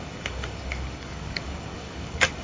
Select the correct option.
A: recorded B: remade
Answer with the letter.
B